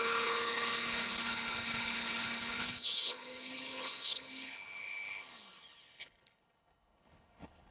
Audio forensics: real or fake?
fake